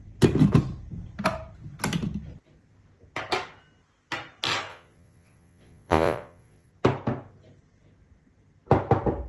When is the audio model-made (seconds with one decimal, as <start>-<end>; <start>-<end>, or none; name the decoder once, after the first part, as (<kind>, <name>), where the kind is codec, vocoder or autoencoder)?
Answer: 4.7-6.7 (vocoder, Vocos)